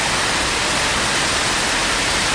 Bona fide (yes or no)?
yes